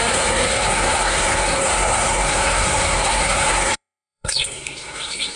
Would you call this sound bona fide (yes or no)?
no